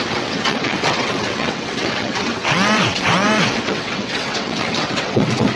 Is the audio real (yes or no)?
no